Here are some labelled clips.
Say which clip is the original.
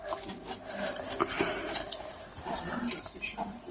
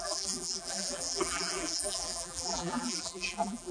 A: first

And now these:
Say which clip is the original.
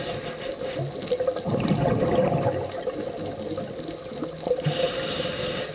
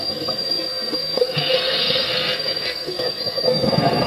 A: first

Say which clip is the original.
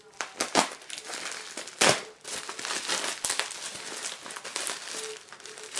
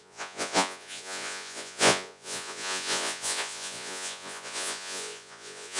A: first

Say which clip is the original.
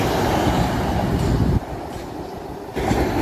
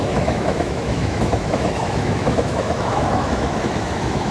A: first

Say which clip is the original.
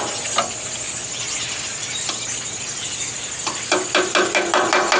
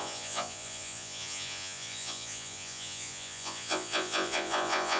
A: first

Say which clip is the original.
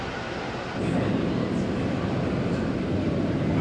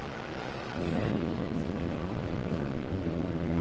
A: first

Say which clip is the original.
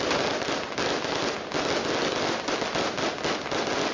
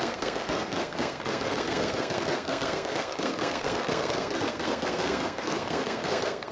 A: first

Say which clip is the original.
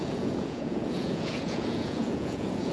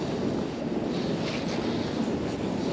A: second